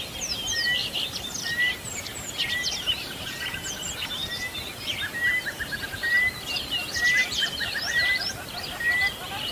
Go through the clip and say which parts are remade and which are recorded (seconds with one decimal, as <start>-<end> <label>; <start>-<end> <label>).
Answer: 0.0-0.8 recorded; 0.8-1.3 remade; 1.3-7.2 recorded; 7.2-8.3 remade; 8.3-9.5 recorded